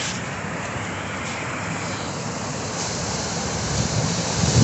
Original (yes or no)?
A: no